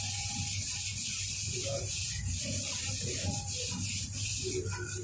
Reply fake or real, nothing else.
real